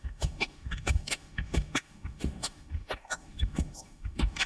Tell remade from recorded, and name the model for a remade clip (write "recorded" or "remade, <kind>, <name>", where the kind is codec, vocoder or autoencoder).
remade, autoencoder, DAC-VAE